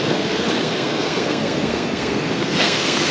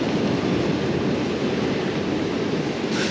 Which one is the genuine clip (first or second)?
second